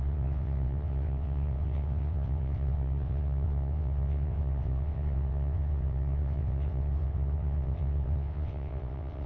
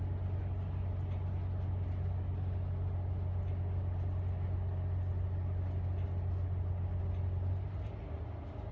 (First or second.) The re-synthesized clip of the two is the first